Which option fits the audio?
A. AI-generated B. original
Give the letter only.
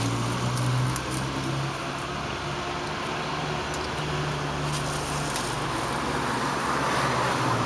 B